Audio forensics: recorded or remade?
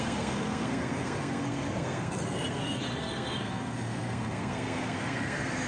remade